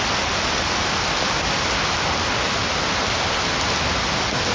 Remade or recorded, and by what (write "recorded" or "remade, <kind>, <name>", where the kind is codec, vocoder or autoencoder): recorded